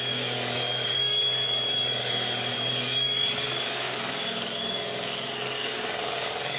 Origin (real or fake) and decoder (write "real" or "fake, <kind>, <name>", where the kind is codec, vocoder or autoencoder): fake, codec, DAC